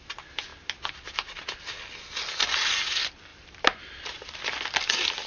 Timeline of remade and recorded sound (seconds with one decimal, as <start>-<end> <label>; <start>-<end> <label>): 0.0-3.3 recorded; 3.3-5.3 remade